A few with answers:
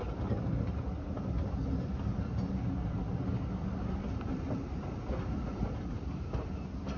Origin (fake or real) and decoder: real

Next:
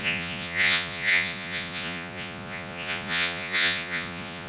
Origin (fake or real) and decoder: fake, vocoder, Vocos